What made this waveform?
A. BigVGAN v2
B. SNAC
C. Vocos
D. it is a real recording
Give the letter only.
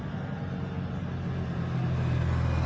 D